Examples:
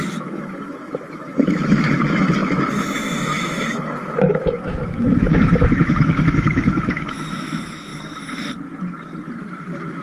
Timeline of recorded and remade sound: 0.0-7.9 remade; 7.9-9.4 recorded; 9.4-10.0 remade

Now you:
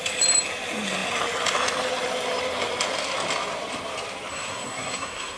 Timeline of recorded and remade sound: 0.0-4.3 recorded; 4.3-5.4 remade